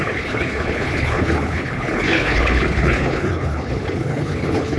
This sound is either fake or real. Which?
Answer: fake